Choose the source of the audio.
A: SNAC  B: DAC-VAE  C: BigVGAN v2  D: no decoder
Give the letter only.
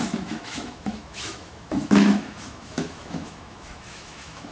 B